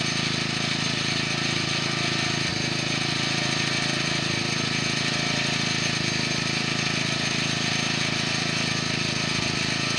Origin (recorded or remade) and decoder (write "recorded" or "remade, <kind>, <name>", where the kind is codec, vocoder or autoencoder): recorded